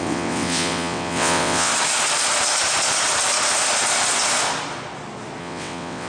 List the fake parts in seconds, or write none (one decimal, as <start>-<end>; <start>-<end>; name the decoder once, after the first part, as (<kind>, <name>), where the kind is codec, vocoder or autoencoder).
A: 0.0-1.7 (vocoder, WaveNeXt); 5.4-6.1